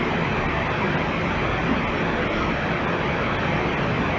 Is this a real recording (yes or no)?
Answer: yes